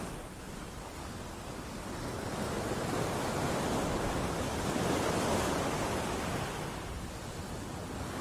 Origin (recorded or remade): recorded